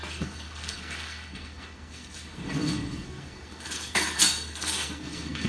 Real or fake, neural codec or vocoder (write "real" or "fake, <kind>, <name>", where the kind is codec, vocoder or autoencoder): fake, codec, SNAC